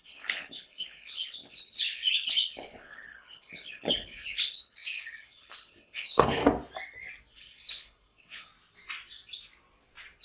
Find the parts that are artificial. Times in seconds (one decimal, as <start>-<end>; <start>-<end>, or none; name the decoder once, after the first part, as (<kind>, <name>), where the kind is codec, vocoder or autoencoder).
0.0-6.4 (codec, HILCodec); 7.3-8.5

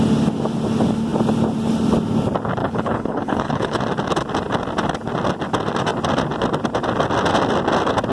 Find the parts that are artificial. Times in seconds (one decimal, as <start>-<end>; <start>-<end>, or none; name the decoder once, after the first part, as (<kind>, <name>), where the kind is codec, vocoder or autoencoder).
2.6-3.8 (codec, HILCodec)